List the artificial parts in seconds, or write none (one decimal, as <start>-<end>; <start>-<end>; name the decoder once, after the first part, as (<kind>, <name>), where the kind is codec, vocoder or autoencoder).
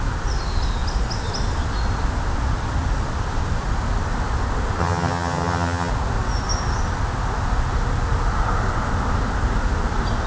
4.8-5.9 (vocoder, HiFi-GAN)